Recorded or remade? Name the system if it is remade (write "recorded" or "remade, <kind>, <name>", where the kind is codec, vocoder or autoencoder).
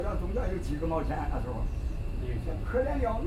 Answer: recorded